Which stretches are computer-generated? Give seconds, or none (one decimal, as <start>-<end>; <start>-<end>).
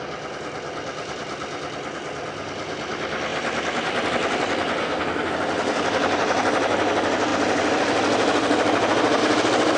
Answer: 4.8-5.3